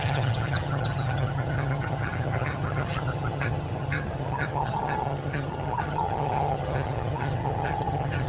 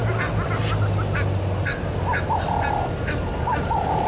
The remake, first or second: first